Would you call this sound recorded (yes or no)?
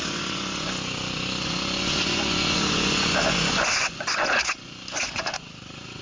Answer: no